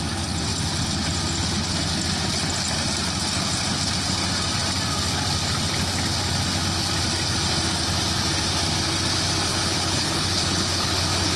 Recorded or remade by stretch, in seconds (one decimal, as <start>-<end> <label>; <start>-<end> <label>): 0.0-9.5 recorded; 9.5-11.4 remade

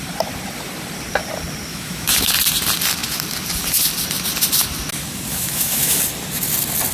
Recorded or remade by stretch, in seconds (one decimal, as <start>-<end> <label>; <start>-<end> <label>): 0.0-1.7 recorded; 1.7-2.3 remade; 2.3-5.3 recorded; 5.3-6.0 remade; 6.0-6.9 recorded

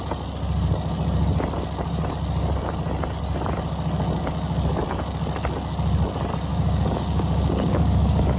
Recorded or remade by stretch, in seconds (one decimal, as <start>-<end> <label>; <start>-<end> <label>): 0.0-6.5 recorded; 6.5-8.4 remade

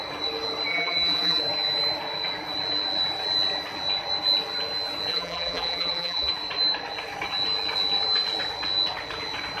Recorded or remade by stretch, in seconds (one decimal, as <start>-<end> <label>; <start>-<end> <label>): 0.0-0.7 recorded; 0.7-1.4 remade; 1.4-5.1 recorded; 5.1-6.3 remade; 6.3-9.6 recorded